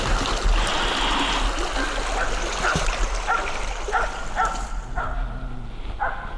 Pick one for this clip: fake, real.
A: real